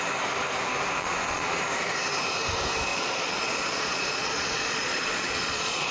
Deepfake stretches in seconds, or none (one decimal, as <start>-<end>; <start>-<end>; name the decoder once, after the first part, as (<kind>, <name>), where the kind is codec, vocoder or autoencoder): 1.0-1.6 (vocoder, Vocos); 2.9-5.9